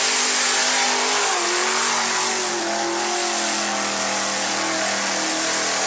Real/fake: real